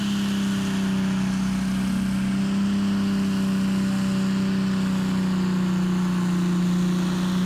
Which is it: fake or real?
real